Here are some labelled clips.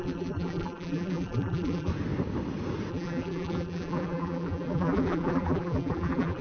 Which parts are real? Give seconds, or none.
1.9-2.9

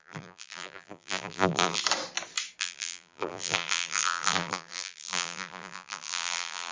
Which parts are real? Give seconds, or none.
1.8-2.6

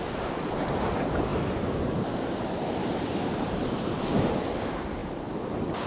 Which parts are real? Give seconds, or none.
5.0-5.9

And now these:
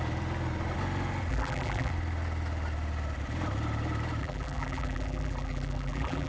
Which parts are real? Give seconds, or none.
0.0-1.3; 1.9-4.2

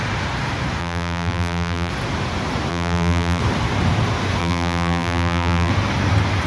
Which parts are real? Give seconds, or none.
0.0-0.8; 1.9-2.7; 3.4-4.4; 5.7-6.5

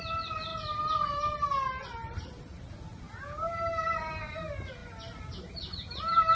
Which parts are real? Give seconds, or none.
0.0-6.3